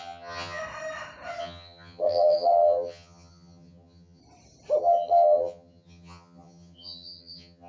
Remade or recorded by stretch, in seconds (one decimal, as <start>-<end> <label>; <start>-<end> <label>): 0.0-0.6 remade; 0.6-1.4 recorded; 1.4-4.2 remade; 4.2-4.8 recorded; 4.8-7.7 remade